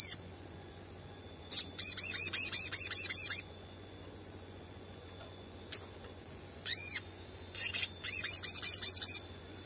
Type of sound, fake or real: fake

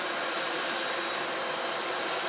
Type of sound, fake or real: real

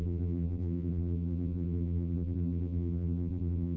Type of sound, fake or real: fake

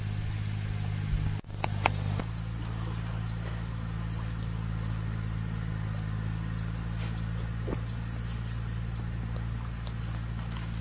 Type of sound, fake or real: real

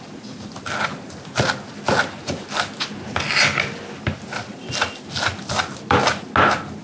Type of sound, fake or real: real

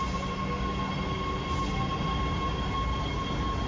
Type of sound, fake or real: real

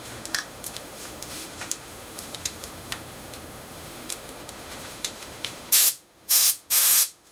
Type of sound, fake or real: fake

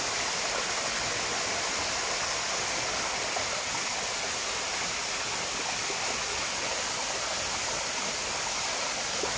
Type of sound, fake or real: real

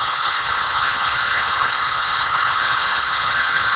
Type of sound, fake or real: fake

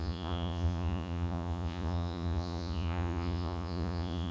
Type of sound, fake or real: fake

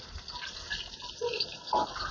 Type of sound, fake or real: real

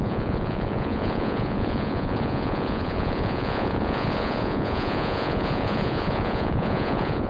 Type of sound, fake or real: fake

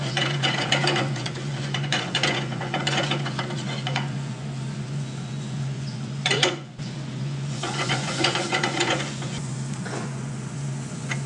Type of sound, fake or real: fake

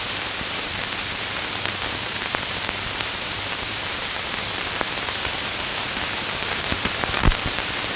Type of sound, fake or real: fake